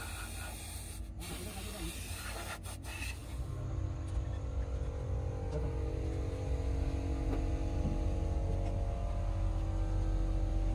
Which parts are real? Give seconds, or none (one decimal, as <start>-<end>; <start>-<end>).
0.0-10.7

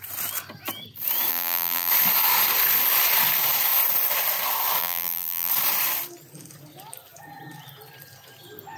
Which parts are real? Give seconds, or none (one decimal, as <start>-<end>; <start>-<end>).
0.0-1.3; 1.9-4.8; 5.5-8.8